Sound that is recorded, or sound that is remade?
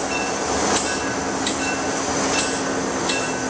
recorded